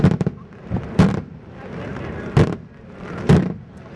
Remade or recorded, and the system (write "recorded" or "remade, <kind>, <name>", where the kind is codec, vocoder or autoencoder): remade, vocoder, BigVGAN v2